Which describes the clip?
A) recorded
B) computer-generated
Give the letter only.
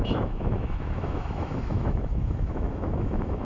B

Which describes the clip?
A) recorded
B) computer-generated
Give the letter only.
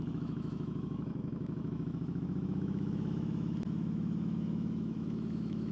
B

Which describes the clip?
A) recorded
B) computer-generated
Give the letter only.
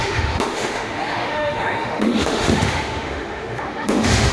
B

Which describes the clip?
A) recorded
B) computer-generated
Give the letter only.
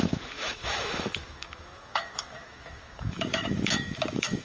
B